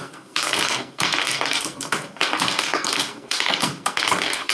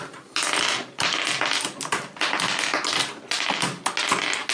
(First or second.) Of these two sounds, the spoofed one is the first